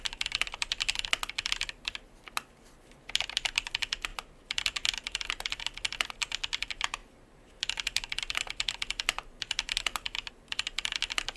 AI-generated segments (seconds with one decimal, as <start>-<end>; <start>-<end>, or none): none